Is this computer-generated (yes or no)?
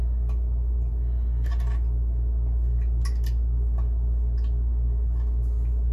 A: no